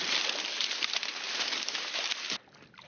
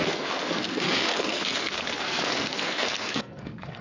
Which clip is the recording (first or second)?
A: first